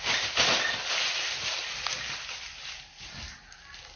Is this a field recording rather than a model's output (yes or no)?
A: yes